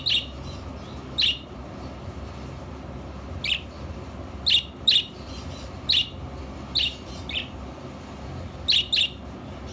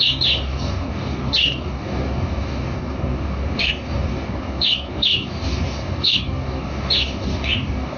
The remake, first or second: second